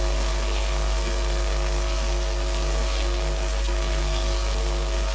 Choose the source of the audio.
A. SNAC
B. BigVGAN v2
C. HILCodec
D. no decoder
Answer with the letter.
A